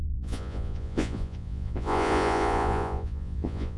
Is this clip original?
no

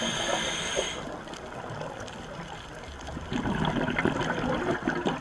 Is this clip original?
yes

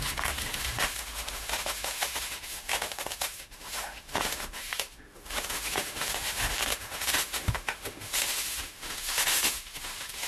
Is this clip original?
no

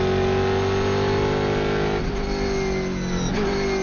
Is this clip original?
yes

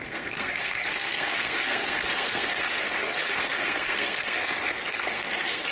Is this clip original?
no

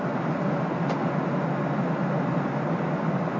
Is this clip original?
yes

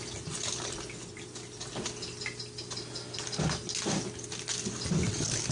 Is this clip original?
yes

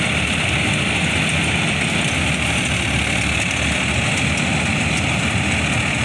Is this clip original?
yes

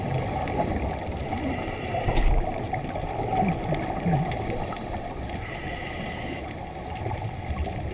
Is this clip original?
yes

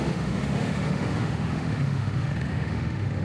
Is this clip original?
no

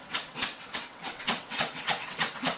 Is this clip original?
no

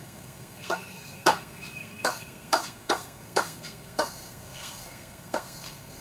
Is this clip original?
no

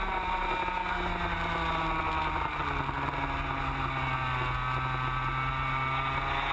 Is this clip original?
yes